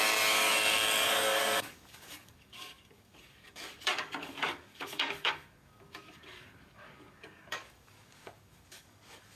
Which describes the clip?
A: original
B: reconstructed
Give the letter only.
B